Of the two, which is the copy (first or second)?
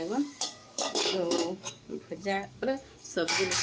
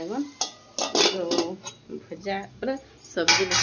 first